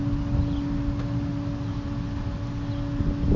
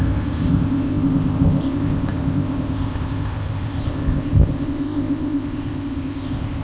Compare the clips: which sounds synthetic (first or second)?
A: second